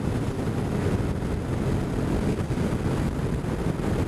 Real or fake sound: real